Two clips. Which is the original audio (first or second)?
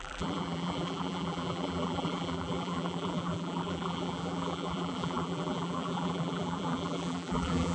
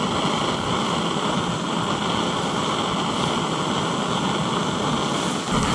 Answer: second